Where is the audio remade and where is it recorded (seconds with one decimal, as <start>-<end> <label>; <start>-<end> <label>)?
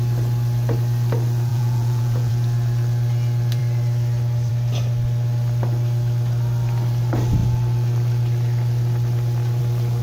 0.0-1.5 recorded; 1.5-2.3 remade; 2.3-10.0 recorded